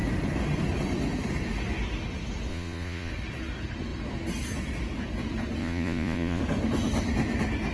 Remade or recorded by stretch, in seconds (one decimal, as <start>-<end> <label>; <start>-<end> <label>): 0.0-2.5 recorded; 2.5-3.1 remade; 3.1-5.6 recorded; 5.6-6.4 remade; 6.4-7.7 recorded